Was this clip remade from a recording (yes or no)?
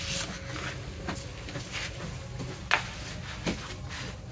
no